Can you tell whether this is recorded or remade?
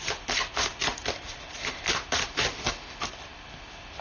recorded